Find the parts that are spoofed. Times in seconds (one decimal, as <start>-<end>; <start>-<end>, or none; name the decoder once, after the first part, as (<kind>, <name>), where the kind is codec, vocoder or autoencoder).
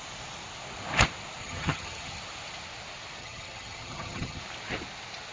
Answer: 1.4-2.2 (vocoder, HiFi-GAN); 3.2-4.4